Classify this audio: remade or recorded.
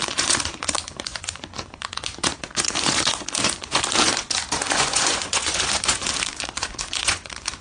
remade